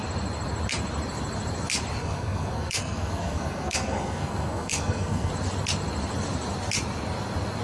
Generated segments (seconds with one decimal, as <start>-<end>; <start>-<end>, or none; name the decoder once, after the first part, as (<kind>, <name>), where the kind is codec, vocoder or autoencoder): 2.0-5.3 (codec, SNAC)